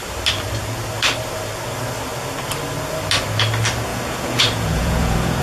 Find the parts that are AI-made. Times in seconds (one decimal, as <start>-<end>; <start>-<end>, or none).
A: 3.9-5.4

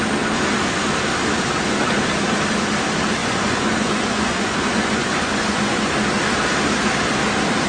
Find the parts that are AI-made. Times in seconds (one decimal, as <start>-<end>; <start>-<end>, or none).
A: 3.2-5.9